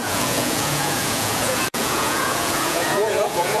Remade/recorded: remade